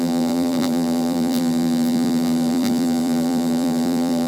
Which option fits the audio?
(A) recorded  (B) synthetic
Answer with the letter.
B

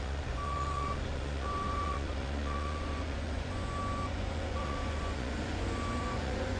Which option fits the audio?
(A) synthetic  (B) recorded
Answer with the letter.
A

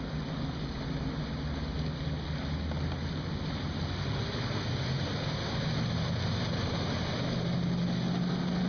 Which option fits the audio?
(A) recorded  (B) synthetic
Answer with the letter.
A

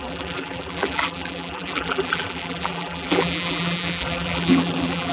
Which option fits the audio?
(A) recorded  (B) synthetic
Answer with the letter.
B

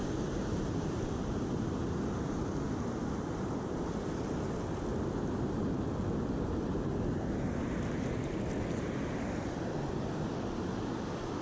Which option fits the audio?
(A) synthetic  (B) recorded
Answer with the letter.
B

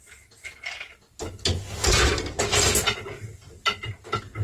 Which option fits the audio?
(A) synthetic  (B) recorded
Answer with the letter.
B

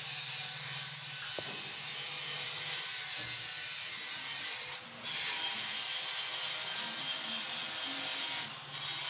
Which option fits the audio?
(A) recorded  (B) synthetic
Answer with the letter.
A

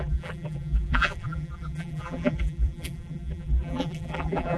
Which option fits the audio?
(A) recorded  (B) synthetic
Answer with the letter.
B